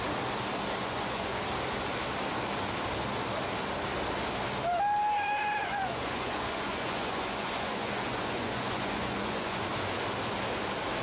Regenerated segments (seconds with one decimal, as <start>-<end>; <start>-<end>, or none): 0.8-1.4; 5.6-9.6